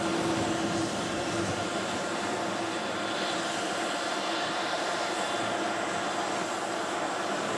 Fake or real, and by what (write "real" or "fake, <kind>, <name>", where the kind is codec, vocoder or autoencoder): real